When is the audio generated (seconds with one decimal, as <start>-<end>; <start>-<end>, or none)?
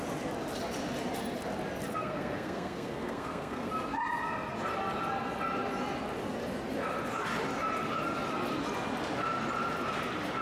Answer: 1.9-3.7